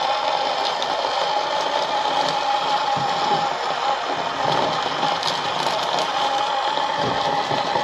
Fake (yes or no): no